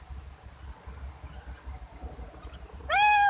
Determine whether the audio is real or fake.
real